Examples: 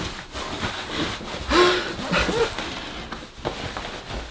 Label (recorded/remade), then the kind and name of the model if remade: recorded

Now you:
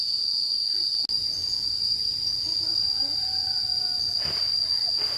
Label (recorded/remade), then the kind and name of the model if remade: recorded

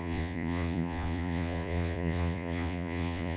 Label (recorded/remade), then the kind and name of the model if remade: remade, vocoder, Vocos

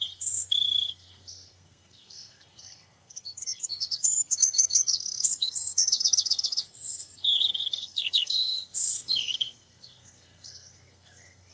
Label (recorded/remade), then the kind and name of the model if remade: remade, codec, SNAC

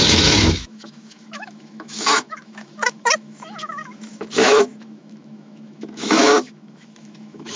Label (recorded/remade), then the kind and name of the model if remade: remade, autoencoder, DAC-VAE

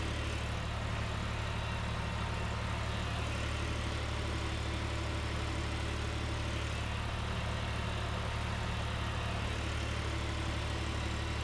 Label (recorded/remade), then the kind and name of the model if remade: recorded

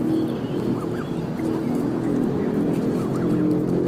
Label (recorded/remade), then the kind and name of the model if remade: recorded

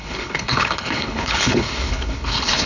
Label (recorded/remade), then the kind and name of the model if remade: remade, codec, HILCodec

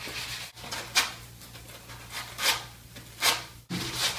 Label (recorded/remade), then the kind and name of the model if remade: recorded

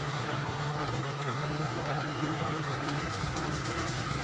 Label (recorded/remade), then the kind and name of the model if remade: remade, codec, SNAC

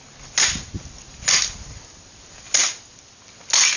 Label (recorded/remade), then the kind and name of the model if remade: recorded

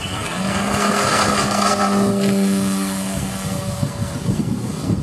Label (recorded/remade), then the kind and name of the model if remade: remade, codec, SNAC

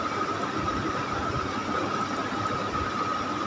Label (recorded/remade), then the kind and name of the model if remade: recorded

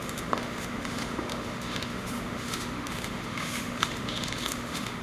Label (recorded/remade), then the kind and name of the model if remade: remade, autoencoder, DAC-VAE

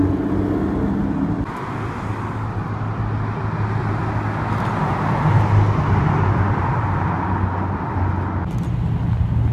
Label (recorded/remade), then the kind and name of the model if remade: recorded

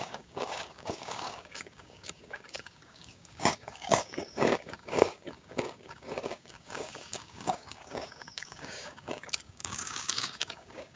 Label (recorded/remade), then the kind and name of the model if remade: remade, codec, DAC